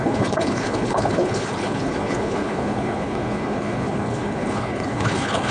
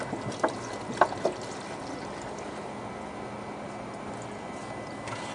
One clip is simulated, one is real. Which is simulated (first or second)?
first